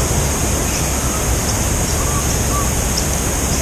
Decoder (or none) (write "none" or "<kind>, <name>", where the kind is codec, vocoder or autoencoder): none